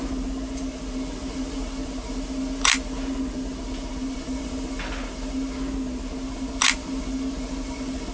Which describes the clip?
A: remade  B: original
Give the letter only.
B